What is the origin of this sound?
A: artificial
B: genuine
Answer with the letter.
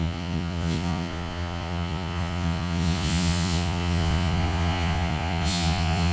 A